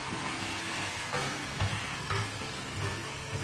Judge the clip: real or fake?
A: fake